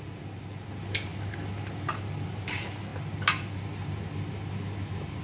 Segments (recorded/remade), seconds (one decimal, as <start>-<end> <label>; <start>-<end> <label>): 0.0-5.2 recorded